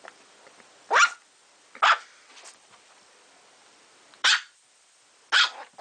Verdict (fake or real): real